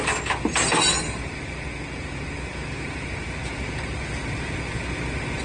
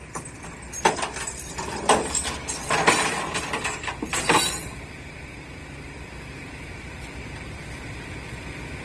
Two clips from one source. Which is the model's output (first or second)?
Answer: second